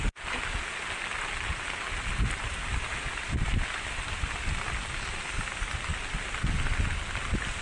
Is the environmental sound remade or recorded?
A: recorded